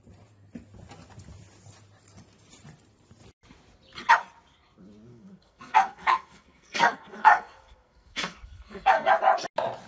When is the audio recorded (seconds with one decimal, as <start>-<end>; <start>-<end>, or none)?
0.0-5.1; 9.1-9.9